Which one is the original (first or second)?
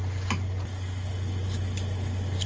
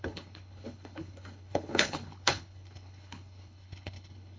first